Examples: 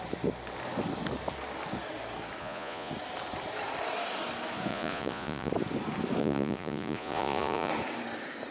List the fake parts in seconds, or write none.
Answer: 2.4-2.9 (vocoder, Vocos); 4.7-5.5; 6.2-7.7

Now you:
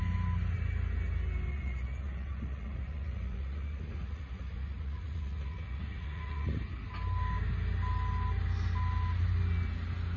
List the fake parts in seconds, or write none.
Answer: 1.5-6.6 (vocoder, Vocos)

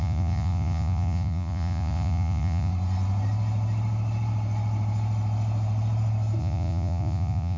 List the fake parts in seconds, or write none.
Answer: 0.0-2.7 (vocoder, Vocos); 6.4-7.6

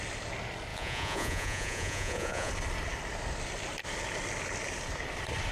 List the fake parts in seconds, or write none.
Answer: 0.7-2.5 (vocoder, Vocos)

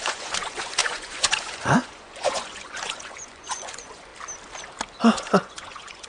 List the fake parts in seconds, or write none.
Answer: 0.0-4.1 (vocoder, Vocos); 5.0-6.1

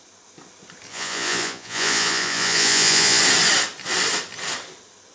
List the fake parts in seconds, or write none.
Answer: 0.9-3.2 (vocoder, Vocos)

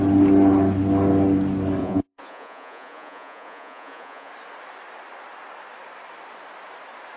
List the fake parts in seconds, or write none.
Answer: 1.8-4.3 (vocoder, Vocos)